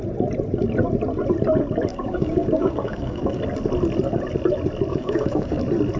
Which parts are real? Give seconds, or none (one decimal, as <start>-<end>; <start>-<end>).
0.0-1.9; 3.4-4.9; 5.6-6.0